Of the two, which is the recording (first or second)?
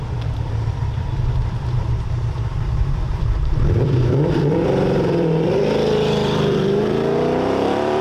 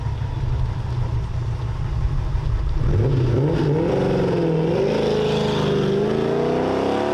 second